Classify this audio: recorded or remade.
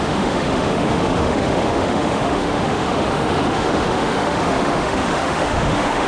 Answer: remade